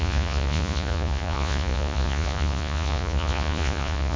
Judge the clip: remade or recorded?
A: remade